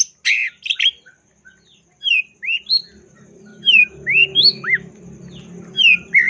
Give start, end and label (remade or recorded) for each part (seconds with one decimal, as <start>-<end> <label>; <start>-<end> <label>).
0.0-3.5 recorded; 3.5-4.9 remade; 4.9-6.3 recorded